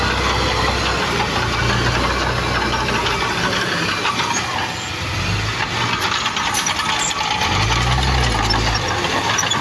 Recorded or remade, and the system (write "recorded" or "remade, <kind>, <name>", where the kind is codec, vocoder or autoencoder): recorded